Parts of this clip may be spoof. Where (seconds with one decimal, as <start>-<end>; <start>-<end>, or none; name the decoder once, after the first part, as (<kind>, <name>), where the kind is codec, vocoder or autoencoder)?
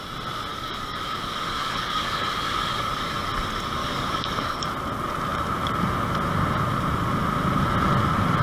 0.5-2.9 (codec, DAC); 3.8-4.7